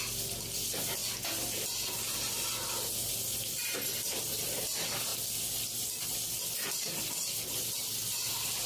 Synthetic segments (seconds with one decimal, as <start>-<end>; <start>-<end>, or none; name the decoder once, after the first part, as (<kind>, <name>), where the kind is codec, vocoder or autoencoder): none